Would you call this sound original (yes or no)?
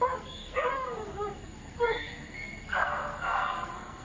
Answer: no